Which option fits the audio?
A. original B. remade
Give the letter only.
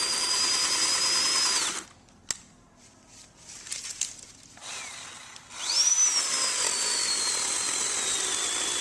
A